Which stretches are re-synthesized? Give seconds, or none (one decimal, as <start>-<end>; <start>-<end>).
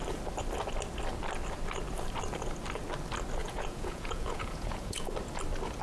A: 3.4-5.1